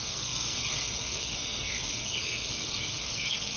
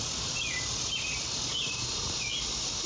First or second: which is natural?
second